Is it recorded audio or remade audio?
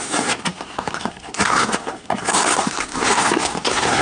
remade